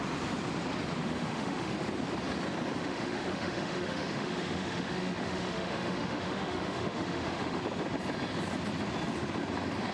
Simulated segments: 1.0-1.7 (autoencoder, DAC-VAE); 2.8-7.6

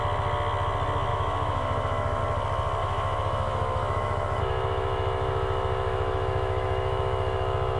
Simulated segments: 1.1-2.2 (autoencoder, DAC-VAE); 2.8-7.8